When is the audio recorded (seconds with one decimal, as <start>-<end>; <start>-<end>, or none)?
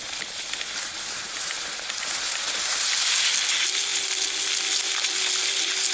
0.0-5.9